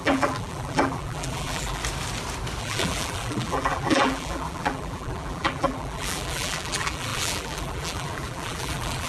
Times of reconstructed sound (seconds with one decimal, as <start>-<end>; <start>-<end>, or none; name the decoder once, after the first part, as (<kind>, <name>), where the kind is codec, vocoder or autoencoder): 0.0-1.8 (vocoder, BigVGAN v2); 2.6-9.1